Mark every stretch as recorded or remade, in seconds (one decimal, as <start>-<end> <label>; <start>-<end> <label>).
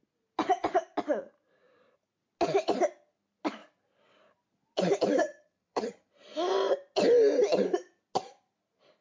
0.0-5.2 recorded; 5.2-6.1 remade; 6.1-9.0 recorded